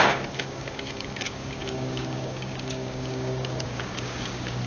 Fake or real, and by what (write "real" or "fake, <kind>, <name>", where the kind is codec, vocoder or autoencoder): fake, codec, DAC